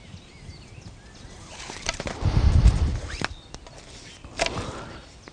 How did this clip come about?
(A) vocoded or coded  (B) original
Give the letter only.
B